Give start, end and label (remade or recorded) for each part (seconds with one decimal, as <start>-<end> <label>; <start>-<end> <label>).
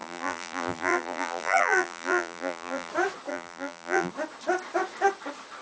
0.0-2.9 remade; 2.9-3.3 recorded; 3.3-4.1 remade; 4.1-5.6 recorded